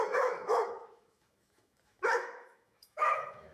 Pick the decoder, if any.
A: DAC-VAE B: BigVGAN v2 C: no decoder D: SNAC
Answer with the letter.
A